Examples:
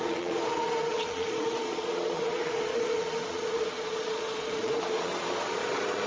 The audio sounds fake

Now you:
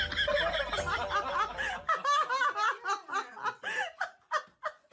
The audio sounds real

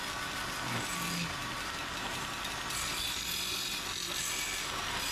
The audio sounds real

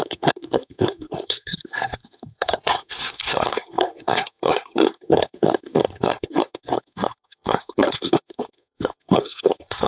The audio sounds fake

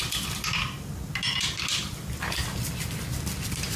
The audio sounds real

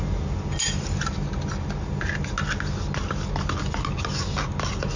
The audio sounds real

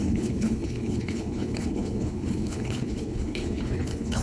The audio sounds fake